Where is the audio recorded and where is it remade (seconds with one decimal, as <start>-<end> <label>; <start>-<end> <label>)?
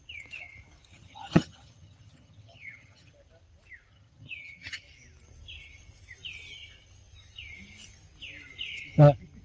0.0-0.9 recorded; 0.9-3.1 remade; 3.1-3.9 recorded; 3.9-4.8 remade; 4.8-9.4 recorded